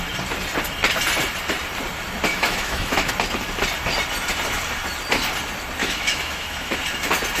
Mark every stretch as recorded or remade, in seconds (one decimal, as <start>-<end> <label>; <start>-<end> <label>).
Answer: 0.0-2.3 recorded; 2.3-3.1 remade; 3.1-5.8 recorded; 5.8-6.8 remade; 6.8-7.4 recorded